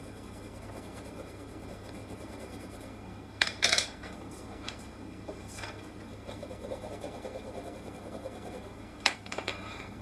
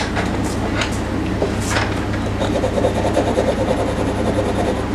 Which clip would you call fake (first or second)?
first